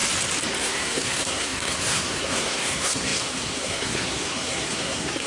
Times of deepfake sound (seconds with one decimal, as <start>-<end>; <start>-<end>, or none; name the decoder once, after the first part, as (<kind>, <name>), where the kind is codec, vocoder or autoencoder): 0.6-5.3 (codec, SNAC)